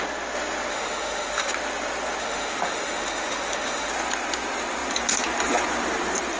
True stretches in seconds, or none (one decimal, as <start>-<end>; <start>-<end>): 0.0-0.7; 1.5-2.2; 3.9-6.4

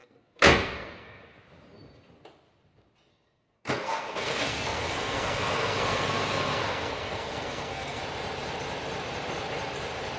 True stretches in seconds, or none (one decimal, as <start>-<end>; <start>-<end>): 1.4-3.1; 8.0-10.2

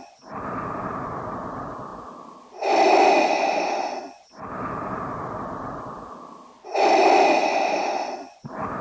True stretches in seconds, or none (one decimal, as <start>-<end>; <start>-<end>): 0.0-8.8

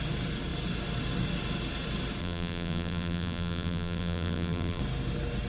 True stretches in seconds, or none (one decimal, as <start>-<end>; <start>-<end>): 0.0-2.2; 4.8-5.5

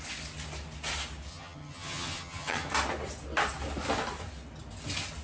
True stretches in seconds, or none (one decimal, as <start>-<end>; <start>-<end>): 0.0-1.3; 2.7-5.2